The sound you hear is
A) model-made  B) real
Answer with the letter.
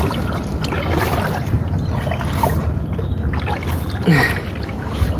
B